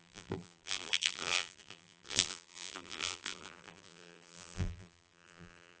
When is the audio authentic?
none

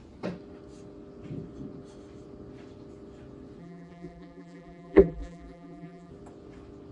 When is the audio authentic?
0.0-3.6; 6.1-6.9

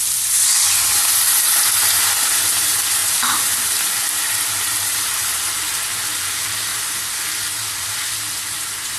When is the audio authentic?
0.0-3.0; 5.1-6.7; 7.2-9.0

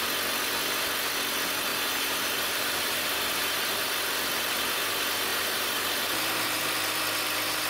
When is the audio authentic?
0.0-1.7; 3.3-5.3; 6.6-7.7

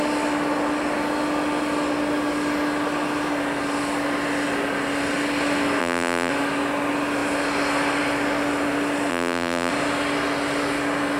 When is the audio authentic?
0.0-5.8; 6.3-9.1; 9.7-11.2

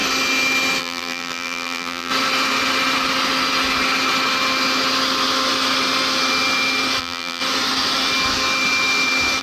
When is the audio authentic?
0.0-0.8; 2.1-7.0; 7.4-9.4

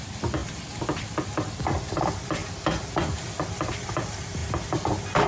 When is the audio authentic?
2.4-3.7; 4.4-5.3